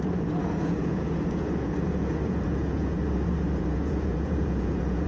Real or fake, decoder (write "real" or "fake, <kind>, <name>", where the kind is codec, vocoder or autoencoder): fake, vocoder, Vocos